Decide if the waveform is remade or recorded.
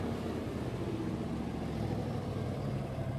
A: remade